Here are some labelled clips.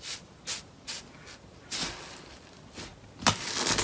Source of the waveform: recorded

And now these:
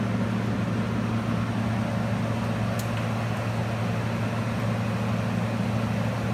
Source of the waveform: recorded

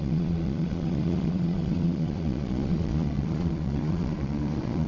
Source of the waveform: remade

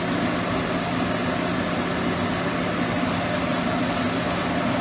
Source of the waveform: recorded